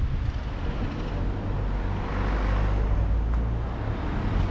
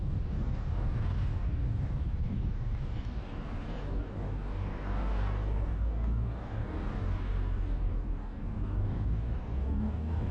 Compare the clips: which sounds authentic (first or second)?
first